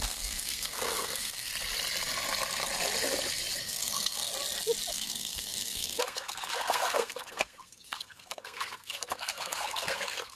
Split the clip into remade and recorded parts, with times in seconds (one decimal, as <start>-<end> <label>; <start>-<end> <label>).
0.0-1.5 remade; 1.5-3.6 recorded; 3.6-4.3 remade; 4.3-4.9 recorded; 4.9-10.4 remade